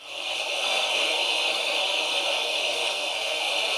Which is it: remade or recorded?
remade